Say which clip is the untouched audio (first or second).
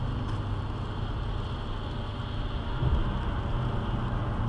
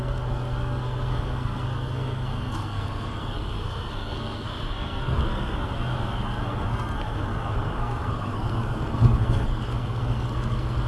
first